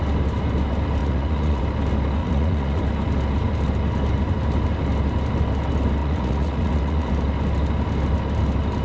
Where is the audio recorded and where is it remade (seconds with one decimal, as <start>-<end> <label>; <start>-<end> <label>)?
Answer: 0.0-1.0 recorded; 1.0-1.6 remade; 1.6-2.2 recorded; 2.2-2.8 remade; 2.8-6.0 recorded; 6.0-7.1 remade; 7.1-8.8 recorded